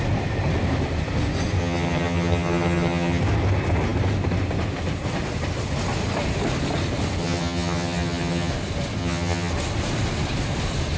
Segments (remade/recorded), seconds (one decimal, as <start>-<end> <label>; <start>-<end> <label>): 0.0-1.6 recorded; 1.6-3.2 remade; 3.2-7.2 recorded; 7.2-8.5 remade; 8.5-9.0 recorded; 9.0-9.5 remade; 9.5-11.0 recorded